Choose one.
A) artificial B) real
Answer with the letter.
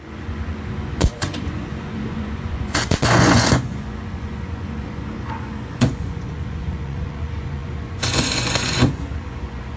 A